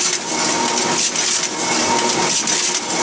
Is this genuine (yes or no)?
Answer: yes